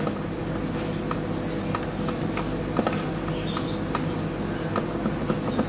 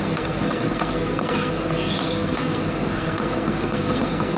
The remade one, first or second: second